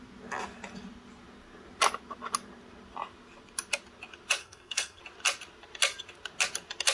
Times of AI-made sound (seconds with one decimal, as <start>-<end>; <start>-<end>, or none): 4.4-5.0